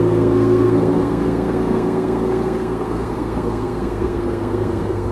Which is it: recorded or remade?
remade